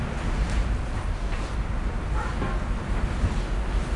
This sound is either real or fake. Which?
real